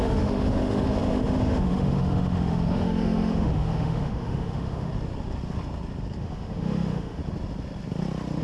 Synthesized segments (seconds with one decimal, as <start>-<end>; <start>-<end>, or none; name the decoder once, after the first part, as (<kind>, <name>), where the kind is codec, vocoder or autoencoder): 0.0-4.9 (autoencoder, DAC-VAE); 6.2-7.2